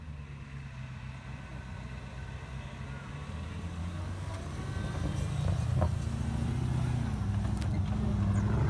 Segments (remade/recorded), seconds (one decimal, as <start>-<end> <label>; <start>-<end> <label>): 0.0-3.8 recorded; 3.8-4.3 remade; 4.3-8.7 recorded